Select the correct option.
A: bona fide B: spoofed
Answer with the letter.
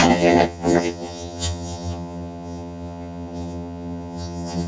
B